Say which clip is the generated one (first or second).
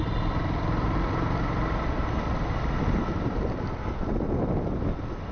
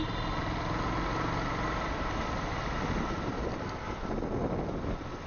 first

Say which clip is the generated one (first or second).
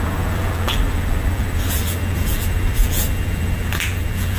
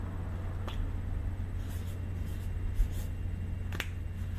first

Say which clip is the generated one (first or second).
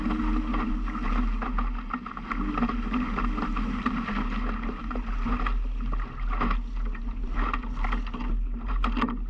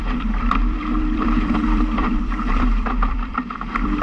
second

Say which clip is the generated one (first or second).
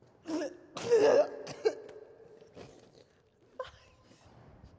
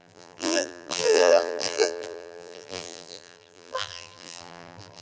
second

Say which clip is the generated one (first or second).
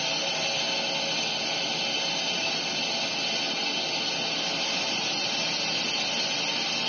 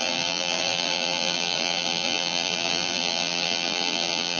second